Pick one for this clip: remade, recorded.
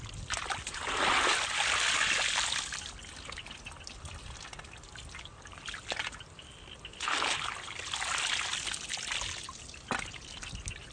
recorded